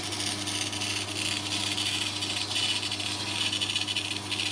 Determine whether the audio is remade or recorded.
recorded